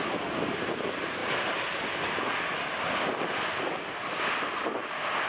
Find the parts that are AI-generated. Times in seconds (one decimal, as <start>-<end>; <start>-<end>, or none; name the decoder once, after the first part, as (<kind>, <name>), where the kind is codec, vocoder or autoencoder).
none